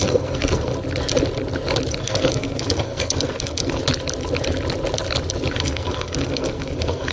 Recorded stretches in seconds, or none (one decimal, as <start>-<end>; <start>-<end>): 0.7-2.0; 3.8-5.5